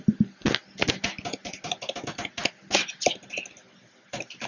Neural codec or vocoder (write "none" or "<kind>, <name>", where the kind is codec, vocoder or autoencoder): none